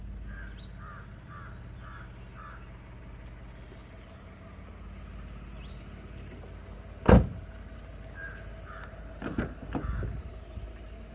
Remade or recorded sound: recorded